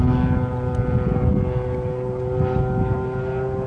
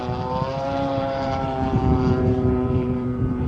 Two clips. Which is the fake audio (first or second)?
second